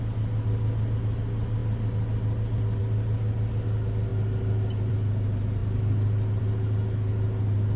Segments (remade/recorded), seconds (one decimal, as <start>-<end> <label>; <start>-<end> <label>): 0.0-7.8 recorded